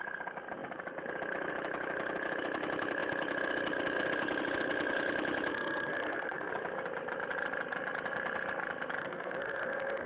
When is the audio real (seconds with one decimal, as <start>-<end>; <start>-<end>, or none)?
0.0-5.5; 6.5-9.0

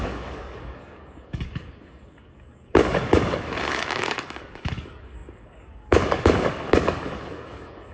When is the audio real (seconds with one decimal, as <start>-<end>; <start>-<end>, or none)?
none

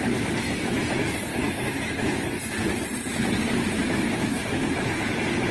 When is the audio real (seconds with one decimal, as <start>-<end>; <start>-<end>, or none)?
0.0-1.3; 2.4-3.8; 5.1-5.5

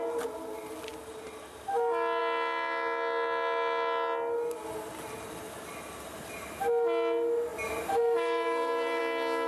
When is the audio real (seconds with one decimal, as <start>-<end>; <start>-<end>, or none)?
0.0-7.5; 9.0-9.5

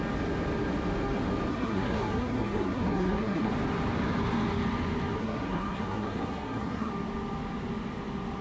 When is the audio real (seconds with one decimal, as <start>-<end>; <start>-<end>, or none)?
0.0-1.5; 3.5-5.2; 6.9-8.4

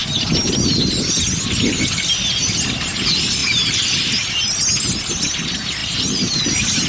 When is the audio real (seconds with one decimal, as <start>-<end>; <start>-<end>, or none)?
0.0-3.4; 4.1-5.8

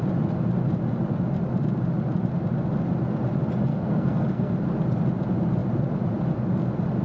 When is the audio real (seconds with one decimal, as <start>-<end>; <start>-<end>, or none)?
0.0-3.7; 4.5-7.0